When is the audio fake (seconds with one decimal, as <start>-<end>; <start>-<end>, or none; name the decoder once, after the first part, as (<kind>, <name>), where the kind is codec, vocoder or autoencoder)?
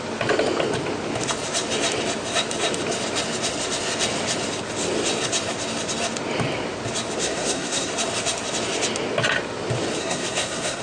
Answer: 7.2-7.9 (codec, SNAC); 10.0-10.8